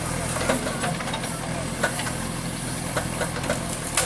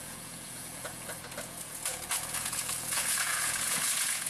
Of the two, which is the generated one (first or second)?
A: second